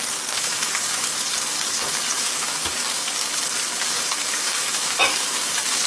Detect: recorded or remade remade